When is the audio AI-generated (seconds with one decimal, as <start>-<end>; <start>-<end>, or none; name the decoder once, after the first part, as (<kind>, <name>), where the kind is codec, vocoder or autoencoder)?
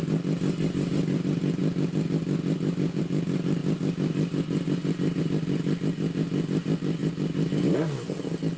none